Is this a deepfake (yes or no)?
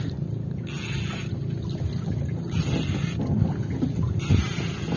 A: no